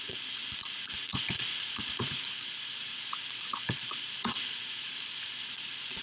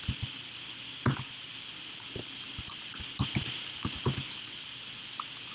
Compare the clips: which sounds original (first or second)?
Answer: second